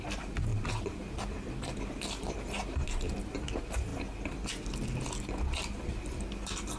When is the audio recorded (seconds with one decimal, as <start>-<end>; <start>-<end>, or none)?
0.0-0.5; 1.0-6.8